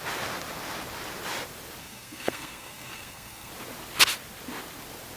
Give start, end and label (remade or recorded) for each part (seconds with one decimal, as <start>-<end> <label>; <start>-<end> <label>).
0.0-1.8 recorded; 1.8-3.5 remade; 3.5-5.2 recorded